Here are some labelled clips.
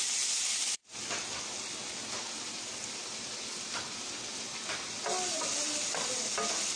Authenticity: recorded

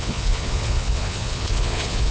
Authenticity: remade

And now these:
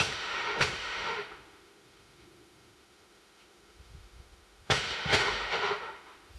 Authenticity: remade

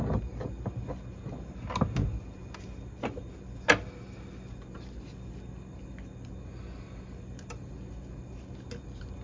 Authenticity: recorded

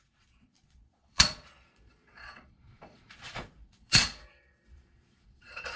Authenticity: remade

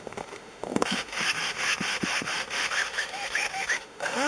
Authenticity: remade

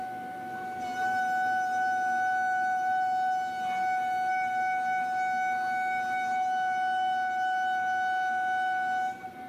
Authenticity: recorded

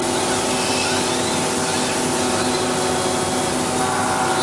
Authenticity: recorded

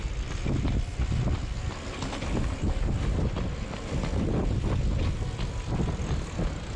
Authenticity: recorded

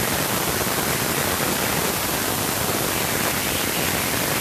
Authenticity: recorded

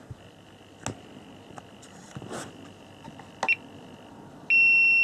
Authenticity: recorded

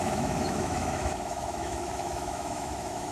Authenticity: remade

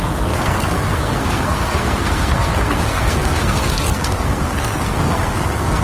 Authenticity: remade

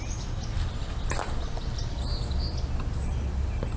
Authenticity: recorded